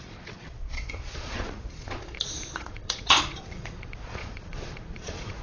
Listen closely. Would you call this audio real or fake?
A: fake